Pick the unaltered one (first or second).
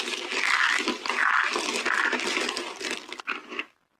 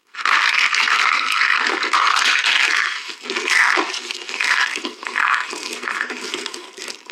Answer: first